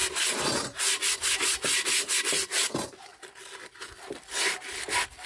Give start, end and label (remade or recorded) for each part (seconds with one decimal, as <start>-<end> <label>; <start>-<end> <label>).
0.0-5.3 recorded